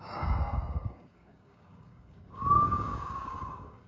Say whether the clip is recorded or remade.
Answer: remade